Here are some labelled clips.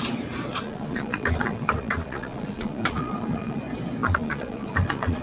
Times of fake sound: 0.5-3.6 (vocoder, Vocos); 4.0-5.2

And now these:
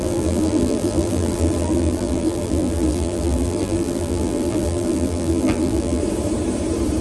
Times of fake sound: 0.0-6.0 (vocoder, BigVGAN v2)

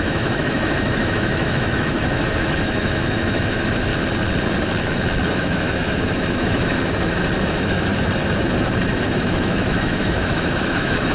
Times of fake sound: 0.0-3.9 (autoencoder, DAC-VAE); 5.3-6.7; 7.4-7.9; 9.0-11.1

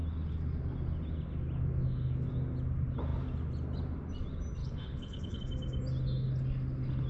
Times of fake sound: 4.6-5.4 (codec, HILCodec)

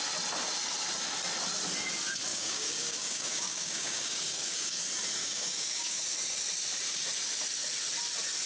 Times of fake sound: 2.3-4.8 (codec, DAC); 5.2-6.0

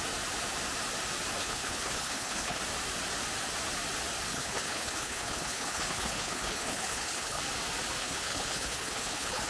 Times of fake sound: 1.4-2.6 (codec, HILCodec); 4.3-7.4; 8.0-9.5